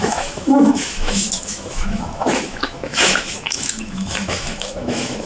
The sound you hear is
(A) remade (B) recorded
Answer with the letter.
A